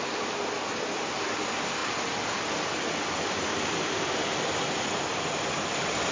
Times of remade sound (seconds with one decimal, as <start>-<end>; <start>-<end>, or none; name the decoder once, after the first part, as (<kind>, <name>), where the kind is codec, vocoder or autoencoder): 1.8-4.5 (vocoder, BigVGAN v2)